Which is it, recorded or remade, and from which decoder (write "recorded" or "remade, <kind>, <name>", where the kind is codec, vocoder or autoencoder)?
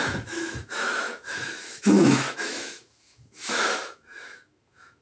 remade, autoencoder, DAC-VAE